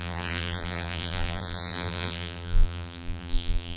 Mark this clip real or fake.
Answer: fake